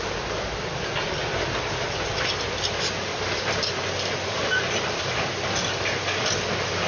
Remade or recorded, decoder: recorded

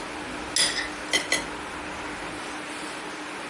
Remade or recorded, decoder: recorded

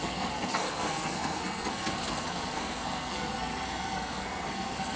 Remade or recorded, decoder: remade, codec, SNAC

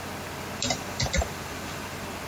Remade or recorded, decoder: recorded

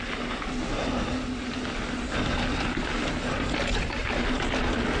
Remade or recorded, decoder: recorded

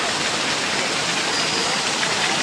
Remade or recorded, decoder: recorded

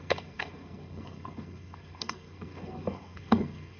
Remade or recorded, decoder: remade, codec, SNAC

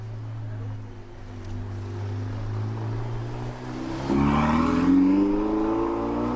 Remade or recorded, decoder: recorded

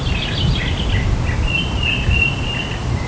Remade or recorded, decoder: recorded